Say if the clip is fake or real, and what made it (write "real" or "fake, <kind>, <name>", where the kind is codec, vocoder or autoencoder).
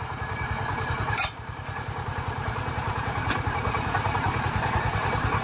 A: fake, vocoder, BigVGAN v2